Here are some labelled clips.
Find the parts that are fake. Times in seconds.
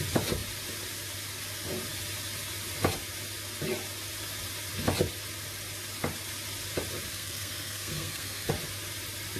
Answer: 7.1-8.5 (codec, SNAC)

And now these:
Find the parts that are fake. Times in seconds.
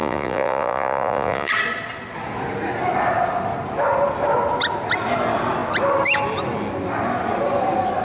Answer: 0.0-1.5 (vocoder, Vocos)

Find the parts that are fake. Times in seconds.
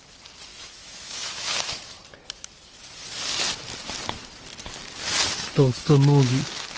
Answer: 0.5-2.0 (autoencoder, DAC-VAE)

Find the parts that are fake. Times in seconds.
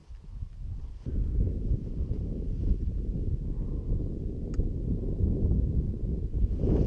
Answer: none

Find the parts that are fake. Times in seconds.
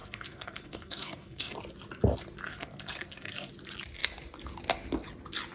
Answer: 0.0-1.5 (codec, SNAC); 2.5-3.5